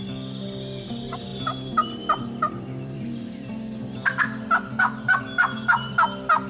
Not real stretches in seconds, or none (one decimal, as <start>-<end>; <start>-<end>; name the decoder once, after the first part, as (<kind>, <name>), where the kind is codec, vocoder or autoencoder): 1.3-4.0 (vocoder, BigVGAN v2)